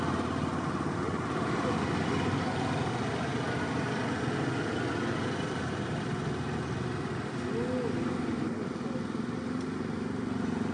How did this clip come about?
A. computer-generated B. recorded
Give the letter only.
B